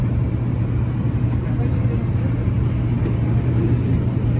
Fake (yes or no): no